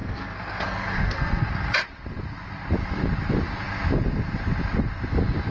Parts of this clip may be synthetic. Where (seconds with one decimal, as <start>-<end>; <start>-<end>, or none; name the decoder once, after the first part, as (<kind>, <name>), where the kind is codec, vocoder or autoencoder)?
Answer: 0.0-1.5 (codec, SNAC)